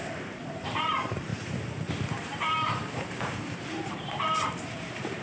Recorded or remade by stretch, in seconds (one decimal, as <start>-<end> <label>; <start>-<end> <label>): 0.0-5.2 remade